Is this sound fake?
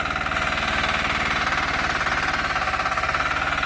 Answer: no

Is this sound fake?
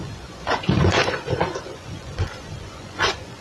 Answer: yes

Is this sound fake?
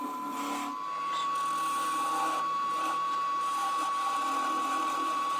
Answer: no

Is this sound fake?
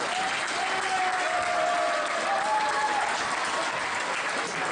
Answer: no